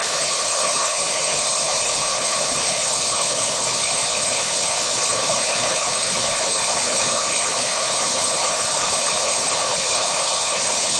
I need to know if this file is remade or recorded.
remade